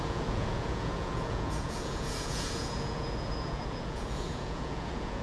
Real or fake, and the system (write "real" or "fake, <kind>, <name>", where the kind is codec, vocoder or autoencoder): fake, vocoder, Vocos